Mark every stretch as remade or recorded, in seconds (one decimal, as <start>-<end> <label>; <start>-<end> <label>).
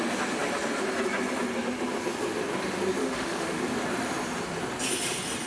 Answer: 0.0-3.0 recorded; 3.0-3.6 remade; 3.6-5.5 recorded